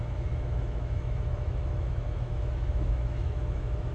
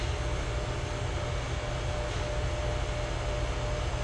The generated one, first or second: first